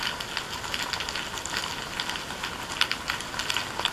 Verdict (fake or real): real